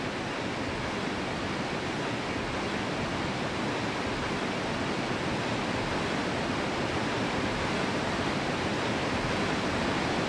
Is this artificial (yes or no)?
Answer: no